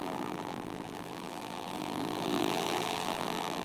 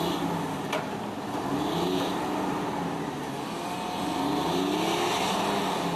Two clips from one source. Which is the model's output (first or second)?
first